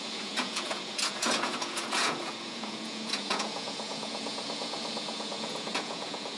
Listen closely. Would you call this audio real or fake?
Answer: fake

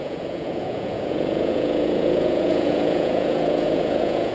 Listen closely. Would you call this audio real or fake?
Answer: fake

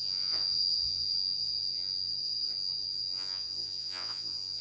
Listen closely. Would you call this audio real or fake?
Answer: fake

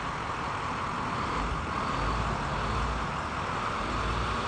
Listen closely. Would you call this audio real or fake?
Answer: real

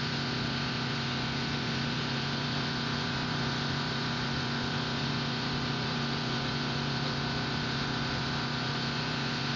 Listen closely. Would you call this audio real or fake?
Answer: fake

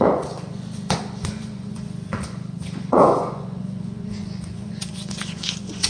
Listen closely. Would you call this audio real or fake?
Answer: fake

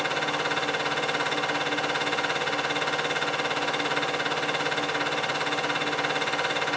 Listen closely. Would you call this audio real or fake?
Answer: real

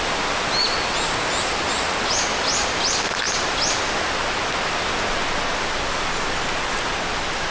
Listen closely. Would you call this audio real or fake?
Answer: real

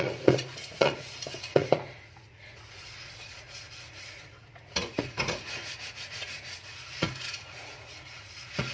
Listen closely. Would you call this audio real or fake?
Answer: fake